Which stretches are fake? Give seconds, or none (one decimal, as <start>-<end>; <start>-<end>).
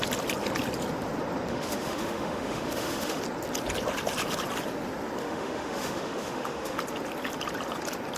1.5-3.2; 5.2-6.8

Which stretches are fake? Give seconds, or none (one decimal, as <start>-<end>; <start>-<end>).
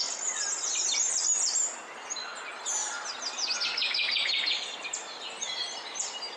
none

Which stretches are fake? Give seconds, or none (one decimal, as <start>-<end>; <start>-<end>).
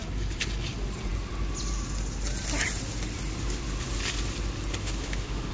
4.8-5.5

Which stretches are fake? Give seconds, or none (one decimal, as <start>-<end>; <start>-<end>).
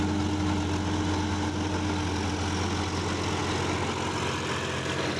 none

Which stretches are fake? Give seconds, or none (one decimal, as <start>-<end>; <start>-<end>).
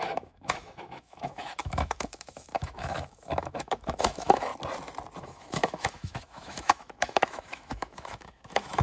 0.0-4.5; 5.2-8.8